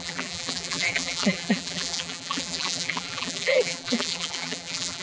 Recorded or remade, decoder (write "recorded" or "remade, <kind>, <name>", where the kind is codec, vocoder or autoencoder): remade, vocoder, BigVGAN v2